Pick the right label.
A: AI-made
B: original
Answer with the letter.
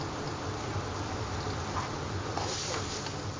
A